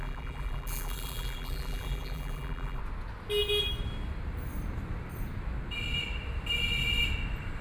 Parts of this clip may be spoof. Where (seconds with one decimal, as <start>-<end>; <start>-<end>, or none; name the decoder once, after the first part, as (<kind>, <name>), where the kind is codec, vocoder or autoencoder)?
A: 0.0-2.8 (vocoder, BigVGAN v2)